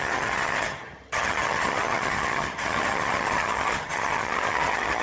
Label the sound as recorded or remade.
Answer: remade